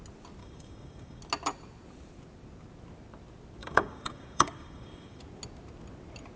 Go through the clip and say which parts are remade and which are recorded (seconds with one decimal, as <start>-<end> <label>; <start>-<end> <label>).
0.0-0.4 recorded; 0.4-1.2 remade; 1.2-3.6 recorded; 3.6-5.2 remade; 5.2-6.4 recorded